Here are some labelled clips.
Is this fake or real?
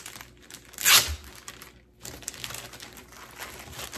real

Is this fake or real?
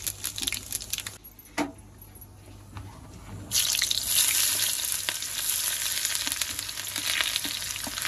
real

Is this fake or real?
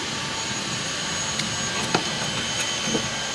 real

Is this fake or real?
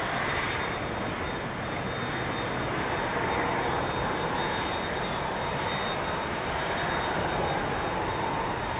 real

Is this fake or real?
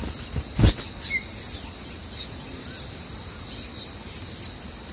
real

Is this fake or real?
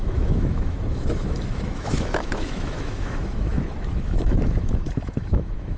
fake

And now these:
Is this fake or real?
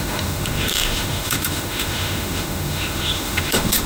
fake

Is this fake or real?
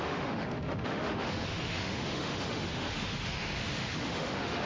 fake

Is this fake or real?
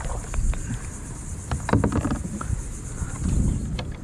real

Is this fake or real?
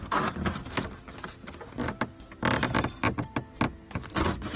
real